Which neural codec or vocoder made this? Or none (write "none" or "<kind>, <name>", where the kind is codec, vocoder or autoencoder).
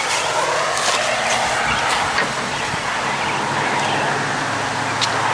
none